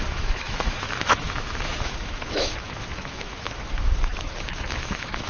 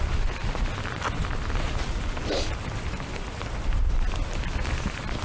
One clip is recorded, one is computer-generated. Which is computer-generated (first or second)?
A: first